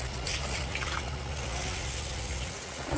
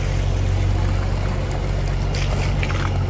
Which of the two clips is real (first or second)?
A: second